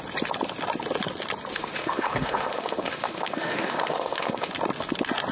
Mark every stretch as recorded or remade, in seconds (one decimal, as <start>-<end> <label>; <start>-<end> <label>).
0.0-1.5 recorded; 1.5-4.5 remade; 4.5-5.3 recorded